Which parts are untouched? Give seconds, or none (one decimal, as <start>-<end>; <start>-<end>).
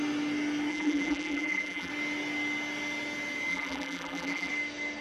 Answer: 0.0-0.7; 1.9-3.5; 4.5-5.0